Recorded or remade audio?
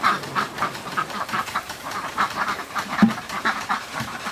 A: remade